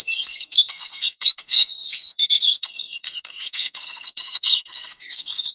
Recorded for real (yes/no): no